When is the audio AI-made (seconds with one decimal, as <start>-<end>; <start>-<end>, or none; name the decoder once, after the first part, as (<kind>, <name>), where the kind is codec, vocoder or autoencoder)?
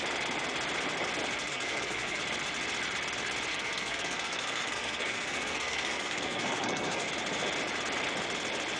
1.5-2.2 (codec, SNAC); 3.5-7.1